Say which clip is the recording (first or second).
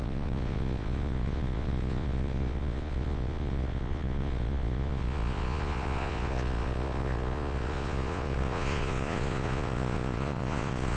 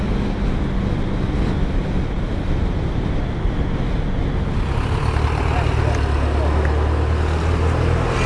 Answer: second